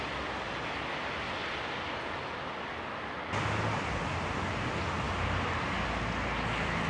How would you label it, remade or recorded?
recorded